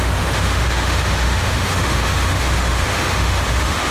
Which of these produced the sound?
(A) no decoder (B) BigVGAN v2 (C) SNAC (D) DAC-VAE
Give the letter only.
D